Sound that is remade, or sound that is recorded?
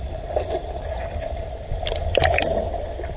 recorded